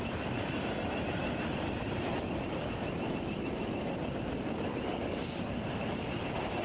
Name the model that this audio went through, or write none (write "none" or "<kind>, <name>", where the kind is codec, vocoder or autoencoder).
vocoder, BigVGAN v2